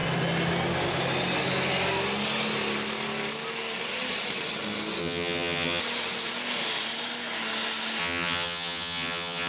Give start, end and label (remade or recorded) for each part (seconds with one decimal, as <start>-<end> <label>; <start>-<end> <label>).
0.0-5.0 recorded; 5.0-5.8 remade; 5.8-8.0 recorded; 8.0-9.5 remade